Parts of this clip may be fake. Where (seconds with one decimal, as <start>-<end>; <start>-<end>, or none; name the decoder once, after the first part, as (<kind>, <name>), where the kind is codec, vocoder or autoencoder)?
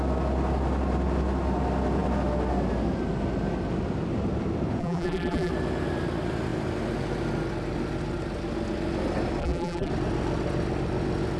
4.8-5.5 (vocoder, BigVGAN v2); 9.4-9.9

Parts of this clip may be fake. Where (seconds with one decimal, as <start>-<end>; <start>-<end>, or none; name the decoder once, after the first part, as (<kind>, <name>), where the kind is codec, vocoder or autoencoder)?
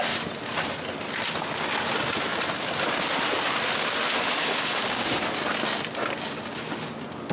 4.4-5.1 (codec, DAC)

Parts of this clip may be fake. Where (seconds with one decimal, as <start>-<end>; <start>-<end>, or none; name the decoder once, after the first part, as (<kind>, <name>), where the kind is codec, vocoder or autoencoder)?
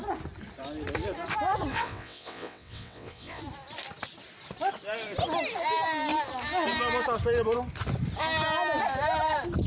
1.7-3.4 (vocoder, WaveNeXt)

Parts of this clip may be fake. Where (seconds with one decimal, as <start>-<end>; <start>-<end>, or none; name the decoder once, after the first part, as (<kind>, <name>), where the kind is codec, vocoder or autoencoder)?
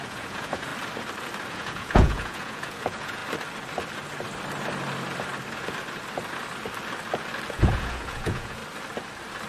0.0-0.7 (vocoder, Vocos); 1.5-3.2; 7.5-8.6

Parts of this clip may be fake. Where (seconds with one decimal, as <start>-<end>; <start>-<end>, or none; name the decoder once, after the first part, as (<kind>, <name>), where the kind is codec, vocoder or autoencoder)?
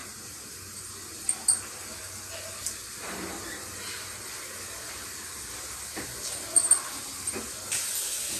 0.0-0.8 (vocoder, BigVGAN v2)